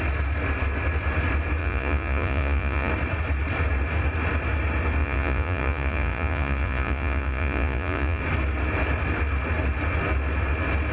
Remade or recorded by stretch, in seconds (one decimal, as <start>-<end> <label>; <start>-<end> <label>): 0.0-1.6 recorded; 1.6-2.9 remade; 2.9-5.0 recorded; 5.0-8.2 remade; 8.2-10.9 recorded